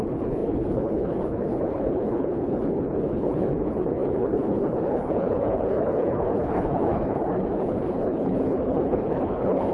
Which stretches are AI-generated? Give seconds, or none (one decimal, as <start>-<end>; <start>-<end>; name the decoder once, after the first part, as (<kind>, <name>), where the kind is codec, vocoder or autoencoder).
0.0-9.7 (codec, HILCodec)